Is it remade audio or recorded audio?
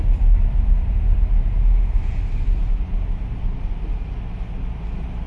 recorded